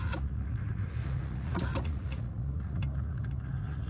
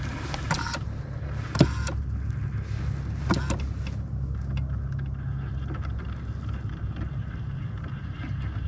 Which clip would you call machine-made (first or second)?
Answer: first